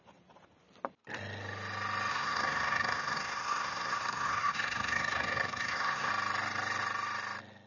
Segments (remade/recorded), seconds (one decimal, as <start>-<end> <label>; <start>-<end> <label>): 0.0-2.1 recorded; 2.1-6.1 remade; 6.1-7.7 recorded

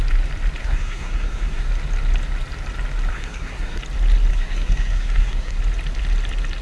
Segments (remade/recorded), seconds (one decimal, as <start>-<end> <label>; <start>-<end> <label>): 0.0-0.6 recorded; 0.6-1.7 remade; 1.7-3.1 recorded; 3.1-3.8 remade; 3.8-4.3 recorded; 4.3-5.6 remade; 5.6-6.6 recorded

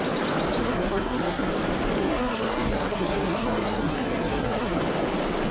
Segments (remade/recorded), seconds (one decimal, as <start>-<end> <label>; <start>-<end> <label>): 0.0-0.6 recorded; 0.6-1.5 remade; 1.5-2.0 recorded; 2.0-4.8 remade; 4.8-5.5 recorded